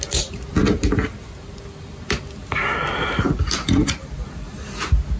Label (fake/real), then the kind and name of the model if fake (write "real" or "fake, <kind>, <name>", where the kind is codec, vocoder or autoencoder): real